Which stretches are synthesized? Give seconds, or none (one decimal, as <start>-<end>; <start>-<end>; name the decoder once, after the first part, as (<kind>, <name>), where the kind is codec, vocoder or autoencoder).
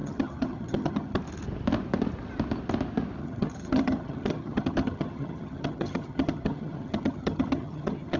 0.0-1.2 (vocoder, HiFi-GAN); 3.2-8.2